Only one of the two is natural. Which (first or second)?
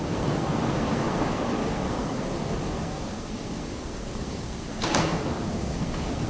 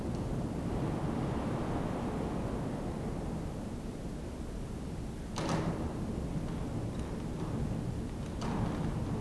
second